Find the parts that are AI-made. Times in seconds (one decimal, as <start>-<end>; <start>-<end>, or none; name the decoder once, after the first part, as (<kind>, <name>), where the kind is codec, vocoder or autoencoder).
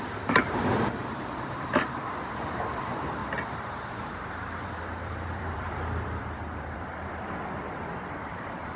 0.0-3.2 (vocoder, BigVGAN v2); 3.9-8.8